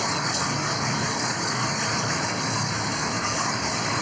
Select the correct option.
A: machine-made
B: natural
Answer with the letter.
A